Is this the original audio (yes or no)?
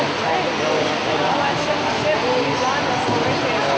yes